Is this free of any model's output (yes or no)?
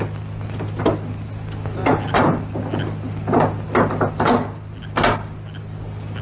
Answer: yes